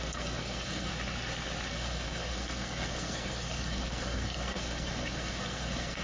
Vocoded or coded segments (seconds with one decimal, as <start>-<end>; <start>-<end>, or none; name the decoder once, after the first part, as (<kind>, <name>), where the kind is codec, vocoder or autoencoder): 0.0-0.9 (codec, SNAC); 1.7-6.0